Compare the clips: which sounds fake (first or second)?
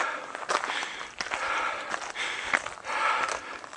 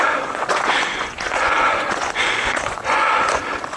second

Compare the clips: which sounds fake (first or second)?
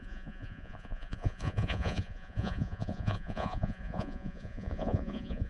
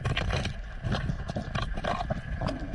first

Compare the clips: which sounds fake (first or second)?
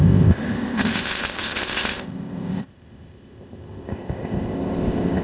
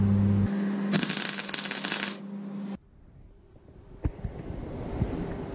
first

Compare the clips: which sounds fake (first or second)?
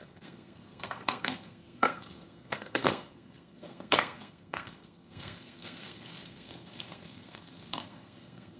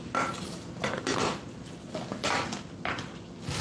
first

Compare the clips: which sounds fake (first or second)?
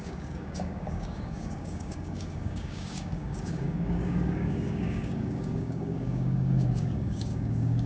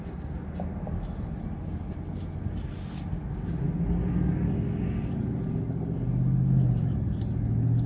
first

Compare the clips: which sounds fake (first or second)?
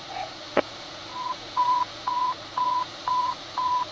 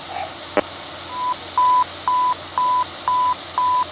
first